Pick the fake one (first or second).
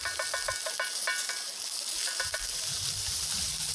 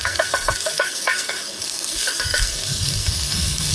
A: second